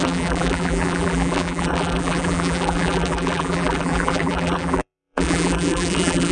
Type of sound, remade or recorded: remade